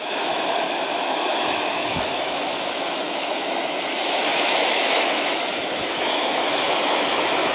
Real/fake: fake